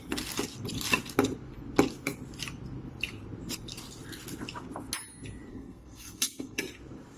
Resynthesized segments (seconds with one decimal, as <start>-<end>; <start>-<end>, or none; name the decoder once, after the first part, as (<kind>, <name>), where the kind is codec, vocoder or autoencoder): 5.5-6.6 (codec, SNAC)